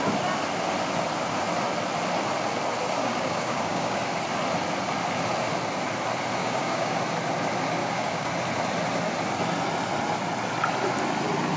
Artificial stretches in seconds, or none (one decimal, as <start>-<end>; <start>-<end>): 3.0-4.0; 6.4-7.0; 7.8-8.3